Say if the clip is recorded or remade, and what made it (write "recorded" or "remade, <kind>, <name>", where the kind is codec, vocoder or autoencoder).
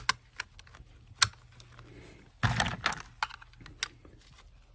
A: recorded